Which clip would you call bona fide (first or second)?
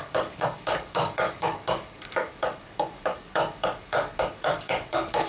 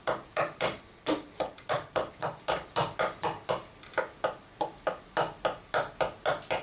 second